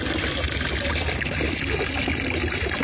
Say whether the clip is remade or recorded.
recorded